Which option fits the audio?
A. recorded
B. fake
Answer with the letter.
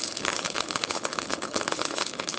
B